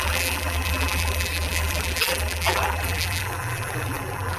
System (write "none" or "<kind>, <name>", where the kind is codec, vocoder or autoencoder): vocoder, BigVGAN v2